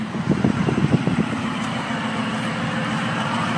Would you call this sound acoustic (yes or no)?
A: no